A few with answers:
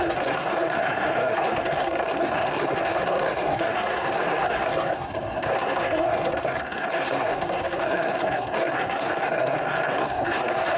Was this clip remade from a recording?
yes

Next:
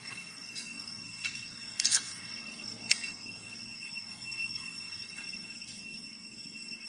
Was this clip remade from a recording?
yes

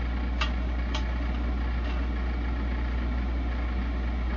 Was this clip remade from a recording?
no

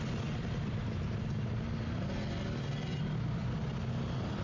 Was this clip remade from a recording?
no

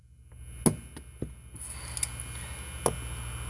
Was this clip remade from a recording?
no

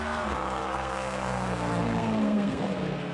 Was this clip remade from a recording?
yes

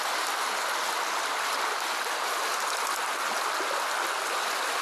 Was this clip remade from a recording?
no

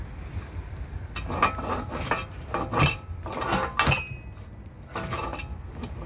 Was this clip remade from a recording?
no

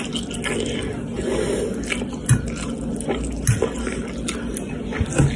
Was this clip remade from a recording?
no